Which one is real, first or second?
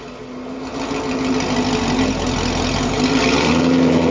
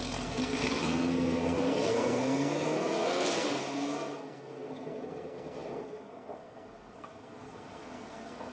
first